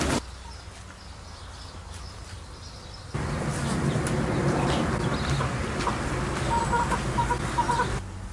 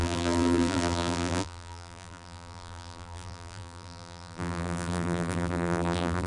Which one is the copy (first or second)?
second